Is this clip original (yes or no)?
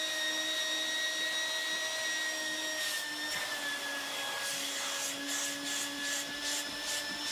yes